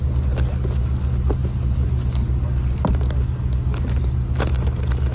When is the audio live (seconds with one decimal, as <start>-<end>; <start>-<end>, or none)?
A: 0.0-5.1